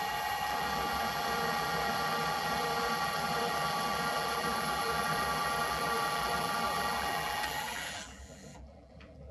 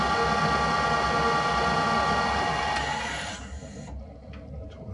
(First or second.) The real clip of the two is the second